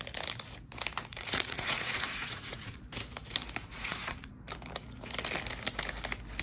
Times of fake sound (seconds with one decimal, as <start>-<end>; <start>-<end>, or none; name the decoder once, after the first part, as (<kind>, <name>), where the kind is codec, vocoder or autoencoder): 1.1-2.8 (vocoder, Vocos); 3.6-4.3